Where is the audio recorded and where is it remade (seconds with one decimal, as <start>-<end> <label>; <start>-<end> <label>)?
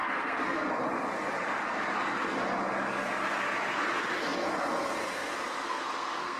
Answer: 0.0-0.7 remade; 0.7-5.7 recorded; 5.7-6.4 remade